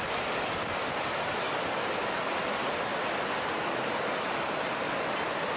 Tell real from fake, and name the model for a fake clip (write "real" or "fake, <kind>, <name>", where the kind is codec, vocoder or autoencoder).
real